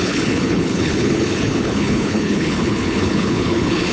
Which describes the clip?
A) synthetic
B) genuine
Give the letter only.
A